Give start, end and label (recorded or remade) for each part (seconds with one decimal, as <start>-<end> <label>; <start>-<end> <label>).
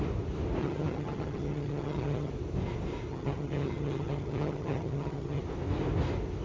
0.0-0.6 recorded; 0.6-2.3 remade; 2.3-3.1 recorded; 3.1-5.4 remade; 5.4-6.4 recorded